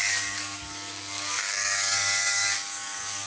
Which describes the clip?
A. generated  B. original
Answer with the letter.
A